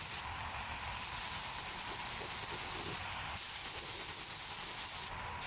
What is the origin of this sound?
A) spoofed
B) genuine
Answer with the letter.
B